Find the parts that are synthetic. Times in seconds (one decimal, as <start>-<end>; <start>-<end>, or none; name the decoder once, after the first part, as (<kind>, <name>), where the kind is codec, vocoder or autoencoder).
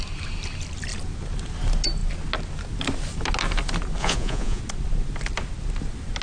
4.0-4.6 (vocoder, Vocos)